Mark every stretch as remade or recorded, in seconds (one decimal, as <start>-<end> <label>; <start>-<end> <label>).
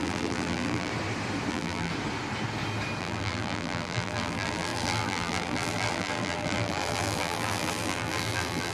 0.0-0.9 remade; 0.9-1.5 recorded; 1.5-1.9 remade; 1.9-3.0 recorded; 3.0-8.7 remade